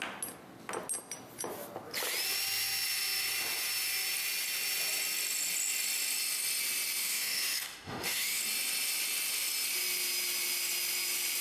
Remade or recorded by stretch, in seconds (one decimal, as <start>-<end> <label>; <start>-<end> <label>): 0.0-7.0 recorded; 7.0-8.4 remade; 8.4-11.4 recorded